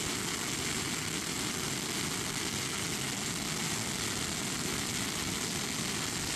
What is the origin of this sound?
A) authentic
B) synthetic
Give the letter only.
A